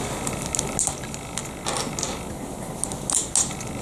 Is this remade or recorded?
recorded